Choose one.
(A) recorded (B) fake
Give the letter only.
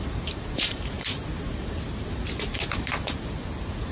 B